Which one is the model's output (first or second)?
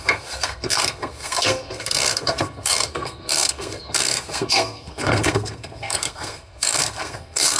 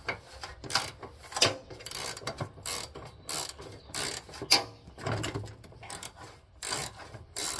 first